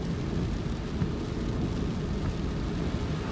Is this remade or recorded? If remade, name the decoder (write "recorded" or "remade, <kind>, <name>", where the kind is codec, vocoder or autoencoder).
recorded